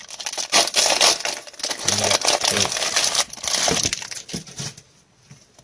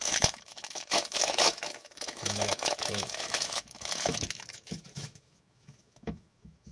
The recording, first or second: first